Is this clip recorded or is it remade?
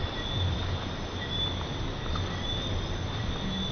recorded